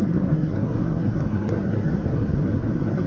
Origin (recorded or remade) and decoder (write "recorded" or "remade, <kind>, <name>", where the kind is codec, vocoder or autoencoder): remade, codec, SNAC